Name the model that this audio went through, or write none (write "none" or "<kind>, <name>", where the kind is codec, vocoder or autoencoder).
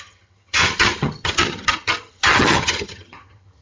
vocoder, HiFi-GAN